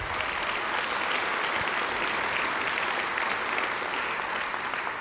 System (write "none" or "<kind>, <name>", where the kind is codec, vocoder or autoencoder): none